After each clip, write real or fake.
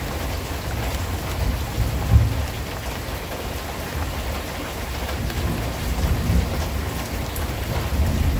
real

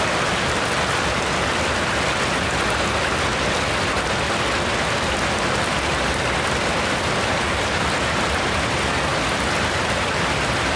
real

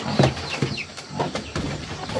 fake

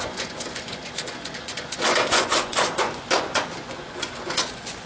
fake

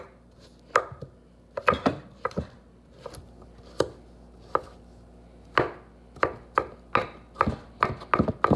real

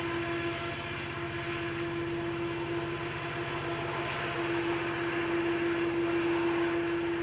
real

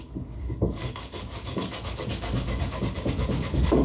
fake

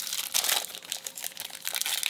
real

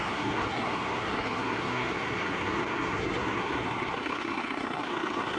fake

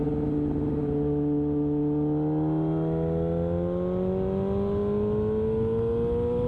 real